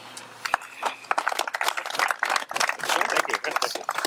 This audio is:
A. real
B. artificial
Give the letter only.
A